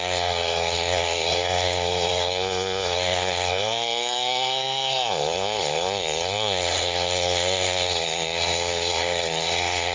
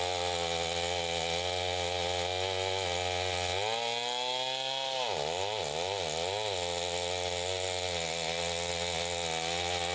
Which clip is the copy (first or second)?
first